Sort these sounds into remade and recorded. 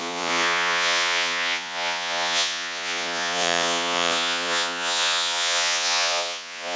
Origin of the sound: remade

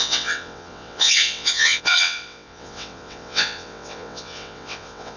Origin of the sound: remade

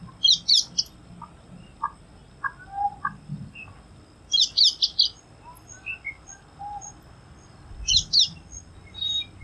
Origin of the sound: recorded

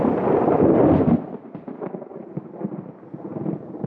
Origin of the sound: recorded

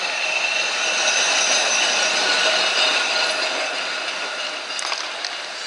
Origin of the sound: recorded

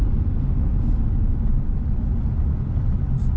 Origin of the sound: recorded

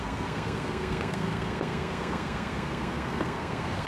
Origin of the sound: remade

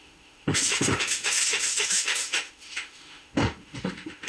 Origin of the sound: remade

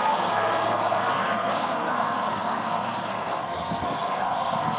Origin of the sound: remade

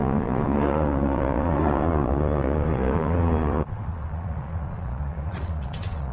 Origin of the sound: remade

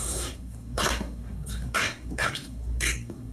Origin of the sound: remade